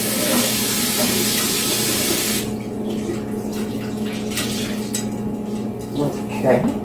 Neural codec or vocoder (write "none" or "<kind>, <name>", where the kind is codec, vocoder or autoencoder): none